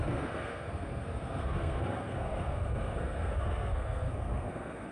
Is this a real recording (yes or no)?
no